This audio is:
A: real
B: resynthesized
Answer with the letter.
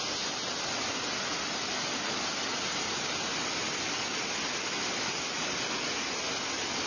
A